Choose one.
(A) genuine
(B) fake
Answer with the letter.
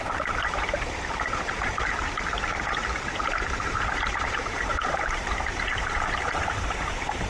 B